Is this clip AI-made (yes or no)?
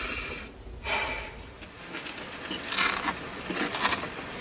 no